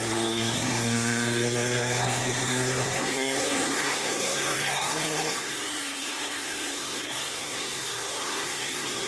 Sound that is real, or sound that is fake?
fake